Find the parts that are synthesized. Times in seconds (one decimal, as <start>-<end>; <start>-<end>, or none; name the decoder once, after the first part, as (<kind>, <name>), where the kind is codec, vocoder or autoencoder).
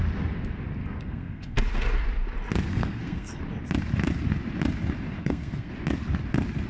0.8-1.6 (codec, SNAC); 2.7-3.4; 5.2-5.7